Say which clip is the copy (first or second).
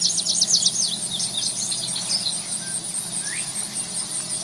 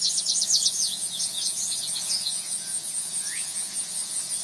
second